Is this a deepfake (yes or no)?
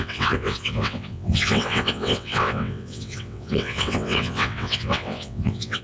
yes